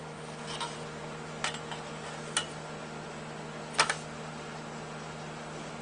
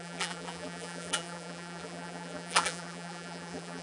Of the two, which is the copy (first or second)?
second